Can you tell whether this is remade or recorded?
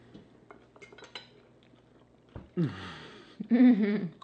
recorded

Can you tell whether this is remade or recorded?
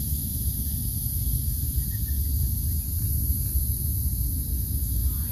recorded